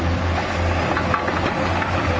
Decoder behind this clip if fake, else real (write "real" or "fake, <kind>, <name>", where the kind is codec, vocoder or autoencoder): real